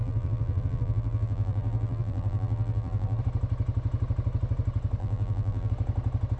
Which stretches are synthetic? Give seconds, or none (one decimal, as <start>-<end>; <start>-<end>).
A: 0.0-3.2; 5.0-5.7